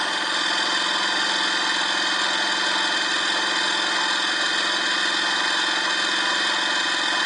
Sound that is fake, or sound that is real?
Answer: real